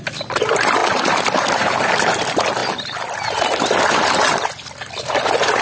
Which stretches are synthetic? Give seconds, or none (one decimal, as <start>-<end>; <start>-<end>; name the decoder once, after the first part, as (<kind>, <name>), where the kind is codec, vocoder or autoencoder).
none

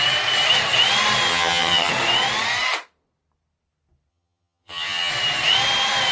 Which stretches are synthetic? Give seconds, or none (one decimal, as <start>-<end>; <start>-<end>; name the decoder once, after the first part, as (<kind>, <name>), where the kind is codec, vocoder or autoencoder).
1.3-1.9 (vocoder, HiFi-GAN); 4.1-5.1

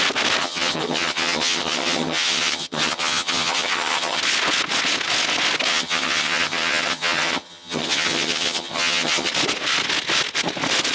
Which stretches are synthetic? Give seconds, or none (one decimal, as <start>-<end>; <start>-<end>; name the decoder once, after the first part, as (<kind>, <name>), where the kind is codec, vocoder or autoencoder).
0.4-4.2 (vocoder, HiFi-GAN); 5.7-9.3

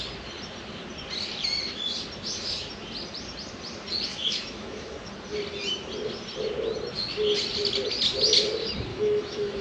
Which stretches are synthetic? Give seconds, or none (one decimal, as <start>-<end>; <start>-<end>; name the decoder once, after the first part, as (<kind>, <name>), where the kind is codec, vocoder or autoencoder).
4.1-5.1 (autoencoder, DAC-VAE); 8.9-9.6